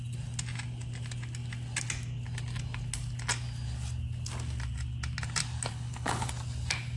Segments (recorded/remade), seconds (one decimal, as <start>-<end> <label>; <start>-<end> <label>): 0.0-5.7 recorded; 5.7-6.3 remade; 6.3-7.0 recorded